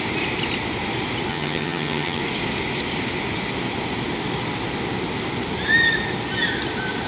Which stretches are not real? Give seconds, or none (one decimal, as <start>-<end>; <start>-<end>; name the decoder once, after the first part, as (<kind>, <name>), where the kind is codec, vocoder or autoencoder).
1.3-2.2 (vocoder, HiFi-GAN)